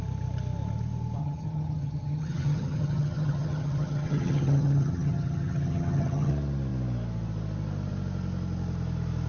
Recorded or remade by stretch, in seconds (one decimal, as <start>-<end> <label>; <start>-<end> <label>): 0.0-1.2 recorded; 1.2-6.3 remade; 6.3-9.3 recorded